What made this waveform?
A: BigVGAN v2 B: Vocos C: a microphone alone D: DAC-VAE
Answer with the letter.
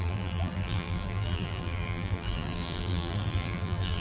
A